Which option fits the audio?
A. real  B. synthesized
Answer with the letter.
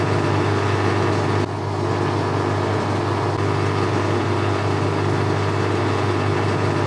A